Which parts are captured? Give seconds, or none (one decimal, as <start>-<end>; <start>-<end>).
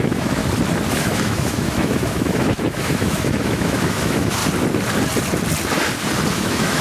0.4-0.9; 4.4-6.3